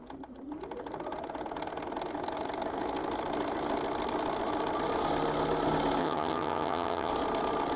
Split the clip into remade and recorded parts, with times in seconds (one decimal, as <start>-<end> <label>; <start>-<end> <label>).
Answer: 0.0-6.0 recorded; 6.0-7.1 remade; 7.1-7.8 recorded